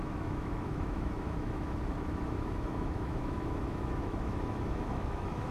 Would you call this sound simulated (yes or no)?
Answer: yes